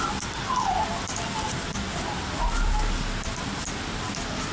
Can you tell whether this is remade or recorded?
recorded